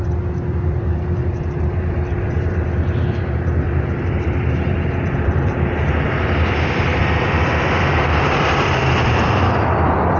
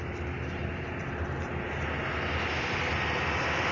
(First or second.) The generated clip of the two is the first